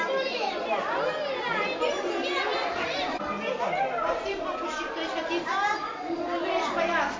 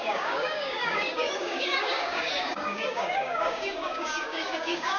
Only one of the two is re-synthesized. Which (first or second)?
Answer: second